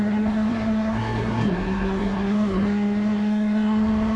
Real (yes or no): no